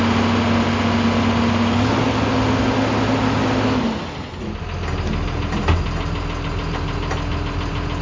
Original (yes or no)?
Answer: yes